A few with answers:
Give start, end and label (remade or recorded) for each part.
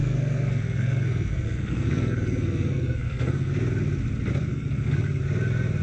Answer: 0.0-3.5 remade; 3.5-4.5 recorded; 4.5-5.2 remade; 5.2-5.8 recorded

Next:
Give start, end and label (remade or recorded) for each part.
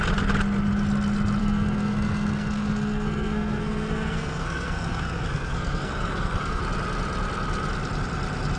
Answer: 0.0-1.4 recorded; 1.4-6.6 remade; 6.6-8.6 recorded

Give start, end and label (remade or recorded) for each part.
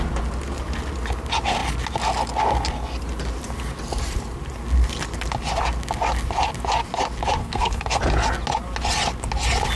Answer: 0.0-7.4 recorded; 7.4-8.0 remade; 8.0-9.8 recorded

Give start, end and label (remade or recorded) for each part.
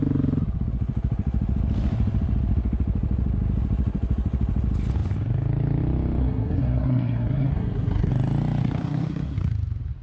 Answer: 0.0-6.2 recorded; 6.2-8.1 remade; 8.1-8.6 recorded; 8.6-9.5 remade; 9.5-10.0 recorded